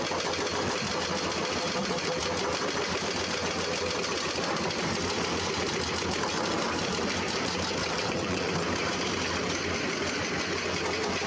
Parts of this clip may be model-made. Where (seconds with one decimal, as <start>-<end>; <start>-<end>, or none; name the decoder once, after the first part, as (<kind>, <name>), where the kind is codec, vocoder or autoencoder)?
7.8-8.5 (vocoder, WaveNeXt)